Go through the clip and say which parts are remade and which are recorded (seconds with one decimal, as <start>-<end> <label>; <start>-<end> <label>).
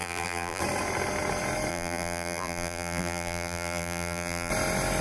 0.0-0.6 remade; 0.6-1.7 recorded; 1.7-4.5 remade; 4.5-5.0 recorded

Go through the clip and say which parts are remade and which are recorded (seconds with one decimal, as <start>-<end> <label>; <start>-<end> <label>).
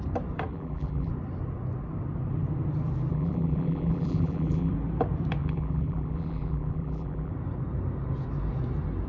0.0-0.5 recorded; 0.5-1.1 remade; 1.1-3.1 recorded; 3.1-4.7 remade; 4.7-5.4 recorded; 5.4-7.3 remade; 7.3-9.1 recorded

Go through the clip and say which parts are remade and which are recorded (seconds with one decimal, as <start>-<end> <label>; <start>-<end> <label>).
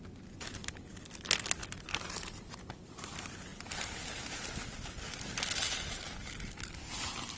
0.0-1.6 recorded; 1.6-2.9 remade; 2.9-7.4 recorded